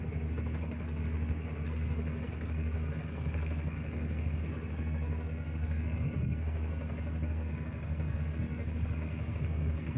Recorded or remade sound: remade